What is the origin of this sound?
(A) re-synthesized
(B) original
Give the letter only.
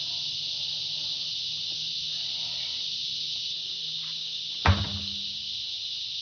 B